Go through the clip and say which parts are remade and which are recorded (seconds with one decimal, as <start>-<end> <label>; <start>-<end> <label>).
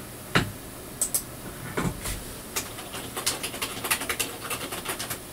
0.0-1.8 recorded; 1.8-2.7 remade; 2.7-5.3 recorded